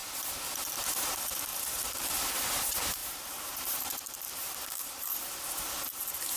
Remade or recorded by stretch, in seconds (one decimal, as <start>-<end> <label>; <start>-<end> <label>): 0.0-1.5 recorded; 1.5-2.3 remade; 2.3-3.0 recorded; 3.0-5.2 remade; 5.2-6.4 recorded